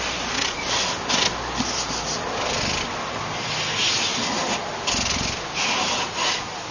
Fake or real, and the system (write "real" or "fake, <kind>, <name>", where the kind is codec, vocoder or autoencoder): real